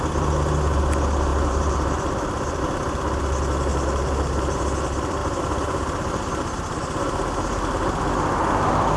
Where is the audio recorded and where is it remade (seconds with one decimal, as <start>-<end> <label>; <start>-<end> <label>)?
0.0-1.3 recorded; 1.3-2.6 remade; 2.6-3.7 recorded; 3.7-4.6 remade; 4.6-5.2 recorded; 5.2-6.1 remade; 6.1-9.0 recorded